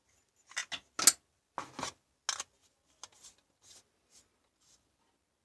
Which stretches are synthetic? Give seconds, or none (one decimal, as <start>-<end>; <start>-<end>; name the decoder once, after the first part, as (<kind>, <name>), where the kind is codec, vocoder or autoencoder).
none